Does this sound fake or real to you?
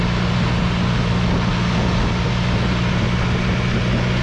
real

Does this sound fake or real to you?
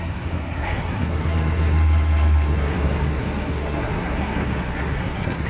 fake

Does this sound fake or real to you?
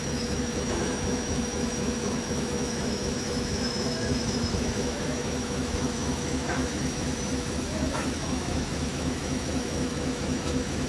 fake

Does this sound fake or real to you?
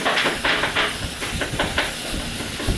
real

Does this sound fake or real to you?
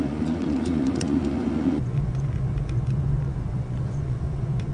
fake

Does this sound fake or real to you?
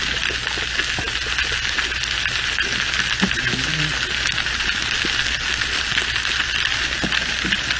real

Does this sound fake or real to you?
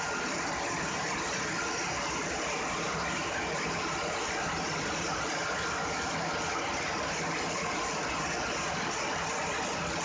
real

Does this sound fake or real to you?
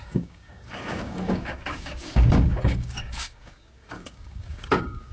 fake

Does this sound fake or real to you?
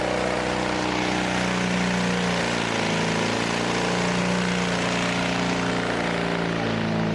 real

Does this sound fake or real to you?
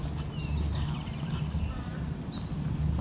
real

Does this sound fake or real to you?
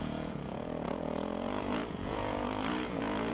fake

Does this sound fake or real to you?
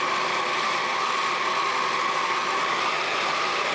real